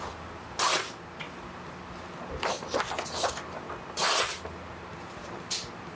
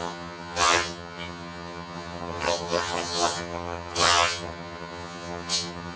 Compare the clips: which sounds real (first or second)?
first